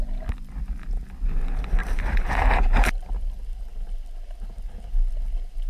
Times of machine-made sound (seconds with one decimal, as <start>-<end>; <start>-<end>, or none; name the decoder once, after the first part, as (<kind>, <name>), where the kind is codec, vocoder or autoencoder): 1.8-2.9 (vocoder, BigVGAN v2)